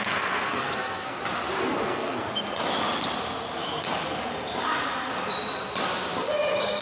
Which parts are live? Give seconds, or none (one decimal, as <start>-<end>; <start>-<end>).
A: 1.2-1.8; 2.3-6.8